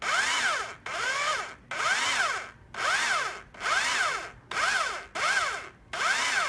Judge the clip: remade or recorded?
recorded